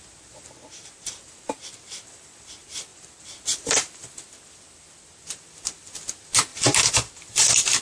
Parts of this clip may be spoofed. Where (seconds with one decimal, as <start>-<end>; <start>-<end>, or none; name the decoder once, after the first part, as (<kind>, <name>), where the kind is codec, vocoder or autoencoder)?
none